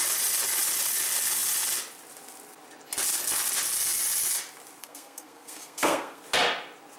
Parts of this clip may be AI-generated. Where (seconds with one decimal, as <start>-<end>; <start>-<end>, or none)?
4.8-6.2